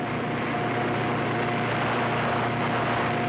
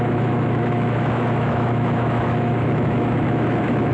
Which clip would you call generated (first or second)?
second